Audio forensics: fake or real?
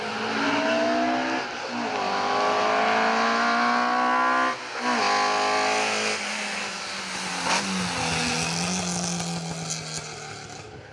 real